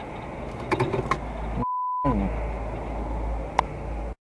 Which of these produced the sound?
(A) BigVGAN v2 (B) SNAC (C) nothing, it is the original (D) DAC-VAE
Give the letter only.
C